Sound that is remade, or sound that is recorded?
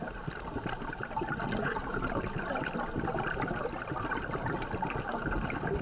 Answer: recorded